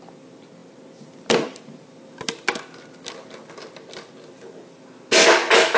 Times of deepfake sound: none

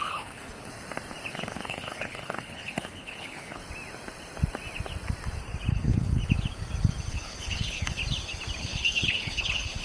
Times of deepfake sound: 0.0-0.7 (codec, HILCodec); 1.3-3.6; 5.7-6.2; 7.1-8.0; 8.6-9.8

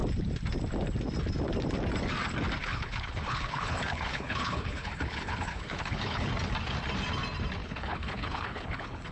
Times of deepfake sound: 2.6-6.3 (codec, HILCodec); 7.6-9.1

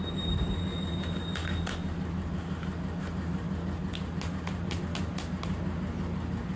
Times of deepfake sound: none